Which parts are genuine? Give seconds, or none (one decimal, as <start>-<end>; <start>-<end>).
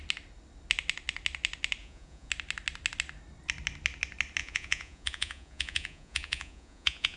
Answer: 0.0-1.8; 2.3-4.4